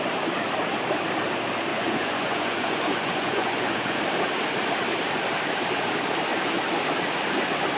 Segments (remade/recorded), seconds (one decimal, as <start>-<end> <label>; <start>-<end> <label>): 0.0-1.7 recorded; 1.7-4.0 remade; 4.0-7.8 recorded